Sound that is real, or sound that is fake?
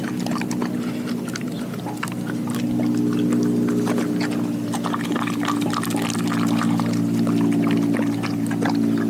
real